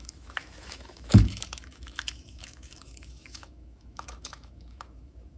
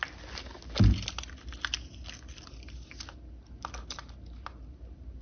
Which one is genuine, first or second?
second